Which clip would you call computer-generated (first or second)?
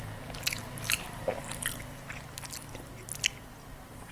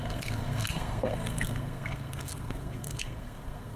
second